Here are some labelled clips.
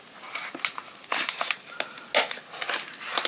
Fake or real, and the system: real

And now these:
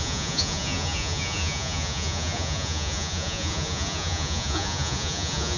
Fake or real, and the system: fake, vocoder, Vocos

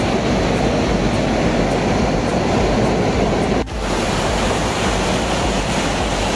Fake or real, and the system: real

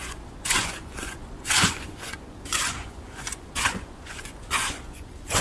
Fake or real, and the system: fake, vocoder, Vocos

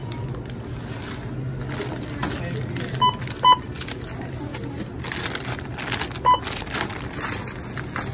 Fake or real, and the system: real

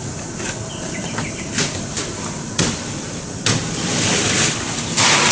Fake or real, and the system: real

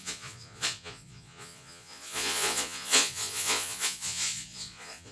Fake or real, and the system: fake, vocoder, Vocos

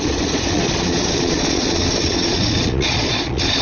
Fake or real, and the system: fake, vocoder, Vocos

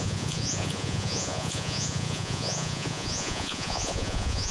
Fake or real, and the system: fake, vocoder, Vocos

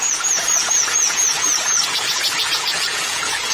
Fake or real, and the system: fake, vocoder, Vocos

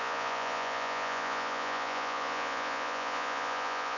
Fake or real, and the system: fake, vocoder, Vocos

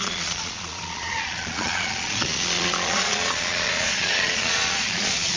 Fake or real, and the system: fake, vocoder, Vocos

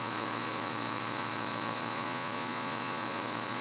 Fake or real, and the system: fake, vocoder, Vocos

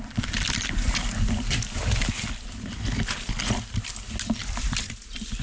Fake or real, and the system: real